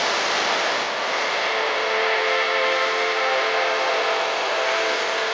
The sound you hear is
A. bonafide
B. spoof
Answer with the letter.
A